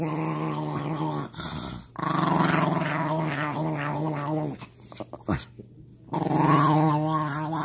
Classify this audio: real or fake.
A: real